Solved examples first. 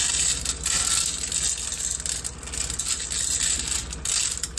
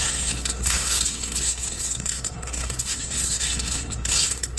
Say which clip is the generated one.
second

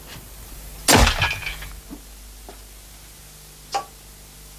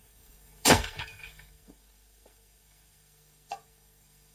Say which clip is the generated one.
second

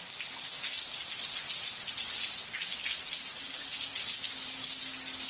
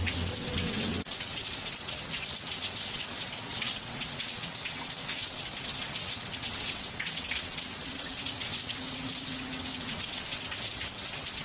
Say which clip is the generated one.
second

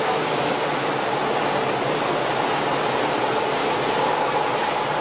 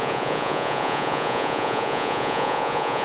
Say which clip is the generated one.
second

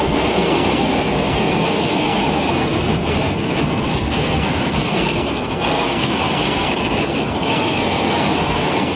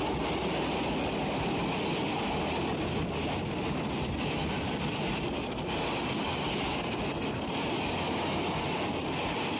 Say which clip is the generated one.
first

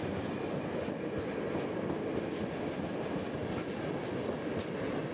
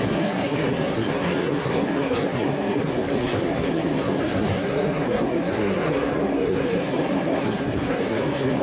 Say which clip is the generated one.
second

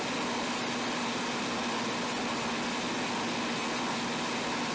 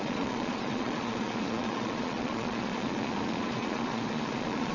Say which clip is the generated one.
second